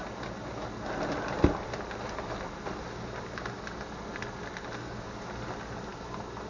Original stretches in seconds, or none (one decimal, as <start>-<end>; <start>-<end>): 0.0-6.5